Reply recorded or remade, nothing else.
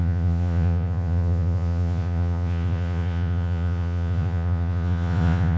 remade